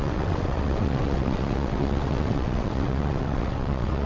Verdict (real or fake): fake